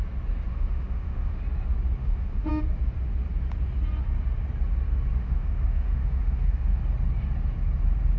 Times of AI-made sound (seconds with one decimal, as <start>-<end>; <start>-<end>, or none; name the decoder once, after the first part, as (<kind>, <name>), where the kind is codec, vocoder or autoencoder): 0.5-1.4 (autoencoder, DAC-VAE); 2.0-2.5; 5.1-6.8